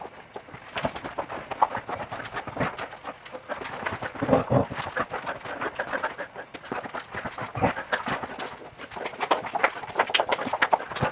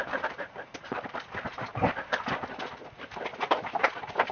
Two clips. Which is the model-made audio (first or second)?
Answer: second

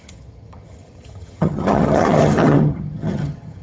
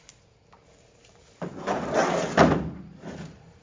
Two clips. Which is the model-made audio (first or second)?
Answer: first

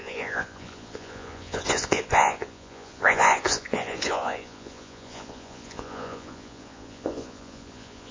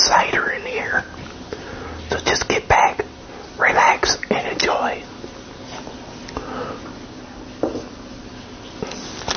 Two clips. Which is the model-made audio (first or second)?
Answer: first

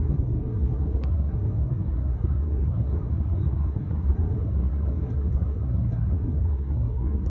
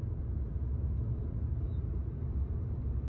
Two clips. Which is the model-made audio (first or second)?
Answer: first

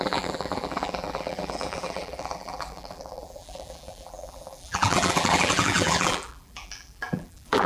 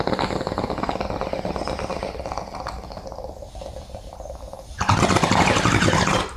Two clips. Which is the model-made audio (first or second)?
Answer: first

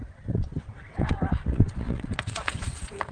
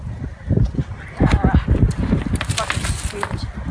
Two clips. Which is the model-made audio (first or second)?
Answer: first